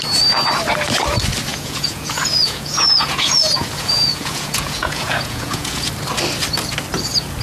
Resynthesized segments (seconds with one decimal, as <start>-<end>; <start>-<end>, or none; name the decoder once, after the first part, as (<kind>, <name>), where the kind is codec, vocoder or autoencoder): 1.5-5.9 (vocoder, Vocos)